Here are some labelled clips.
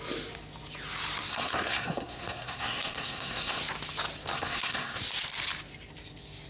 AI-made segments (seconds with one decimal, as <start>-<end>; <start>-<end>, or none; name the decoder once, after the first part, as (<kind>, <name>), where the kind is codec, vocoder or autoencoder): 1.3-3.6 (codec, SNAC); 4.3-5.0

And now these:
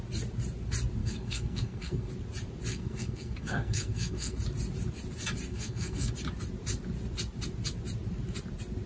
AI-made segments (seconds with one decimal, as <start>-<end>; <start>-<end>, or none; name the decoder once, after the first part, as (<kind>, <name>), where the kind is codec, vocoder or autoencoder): 1.0-2.1 (codec, SNAC); 2.7-4.4; 5.5-6.1

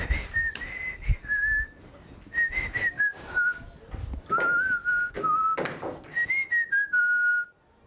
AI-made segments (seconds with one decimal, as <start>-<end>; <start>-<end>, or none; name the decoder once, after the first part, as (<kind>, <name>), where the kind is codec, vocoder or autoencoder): none